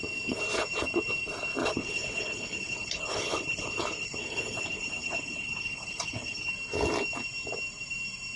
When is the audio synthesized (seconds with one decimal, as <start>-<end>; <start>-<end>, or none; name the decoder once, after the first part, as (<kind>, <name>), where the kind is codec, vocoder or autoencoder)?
1.6-6.5 (codec, HILCodec)